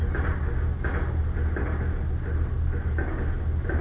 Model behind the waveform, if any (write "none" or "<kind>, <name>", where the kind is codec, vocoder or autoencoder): none